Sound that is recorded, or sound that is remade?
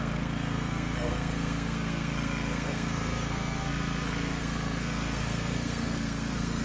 remade